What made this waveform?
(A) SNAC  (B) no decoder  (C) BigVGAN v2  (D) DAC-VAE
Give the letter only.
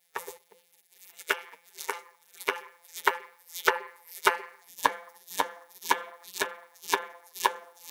C